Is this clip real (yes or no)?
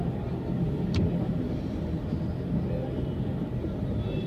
yes